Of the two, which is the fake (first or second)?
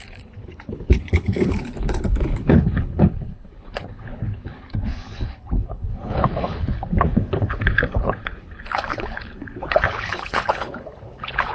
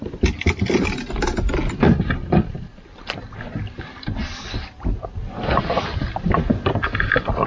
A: first